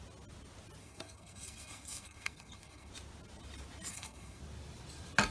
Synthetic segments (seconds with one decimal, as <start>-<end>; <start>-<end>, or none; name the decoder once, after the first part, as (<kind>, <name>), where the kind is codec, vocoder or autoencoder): 0.8-2.9 (codec, SNAC); 3.9-4.4